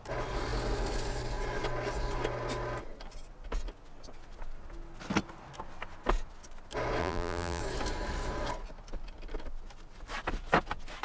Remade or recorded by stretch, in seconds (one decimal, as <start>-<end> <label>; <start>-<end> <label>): 0.0-7.0 recorded; 7.0-7.6 remade; 7.6-11.0 recorded